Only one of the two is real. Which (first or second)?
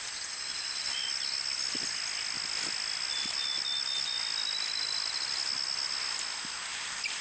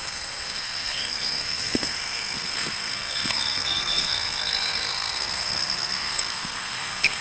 first